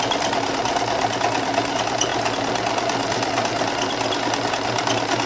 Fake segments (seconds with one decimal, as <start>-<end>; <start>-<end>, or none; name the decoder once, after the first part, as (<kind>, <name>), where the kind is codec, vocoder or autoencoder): none